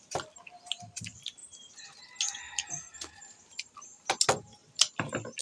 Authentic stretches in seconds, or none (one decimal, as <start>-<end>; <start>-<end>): 0.0-5.4